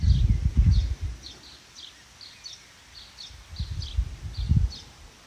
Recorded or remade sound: recorded